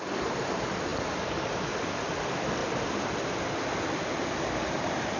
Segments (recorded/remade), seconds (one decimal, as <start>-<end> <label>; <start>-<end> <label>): 0.0-5.2 recorded